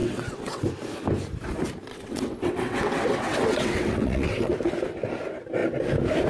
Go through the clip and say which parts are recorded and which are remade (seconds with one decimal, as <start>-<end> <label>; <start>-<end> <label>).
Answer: 0.0-0.6 remade; 0.6-1.9 recorded; 1.9-4.5 remade; 4.5-6.3 recorded

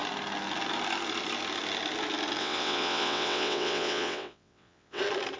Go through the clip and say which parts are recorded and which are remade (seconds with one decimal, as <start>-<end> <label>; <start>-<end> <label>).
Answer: 0.0-2.4 recorded; 2.4-5.0 remade; 5.0-5.4 recorded

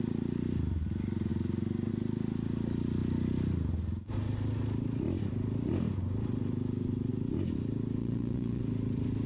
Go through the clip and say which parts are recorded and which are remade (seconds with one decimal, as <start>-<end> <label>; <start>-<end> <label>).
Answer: 0.0-8.0 recorded; 8.0-8.6 remade; 8.6-9.3 recorded